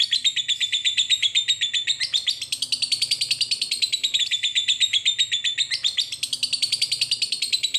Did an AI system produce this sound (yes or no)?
no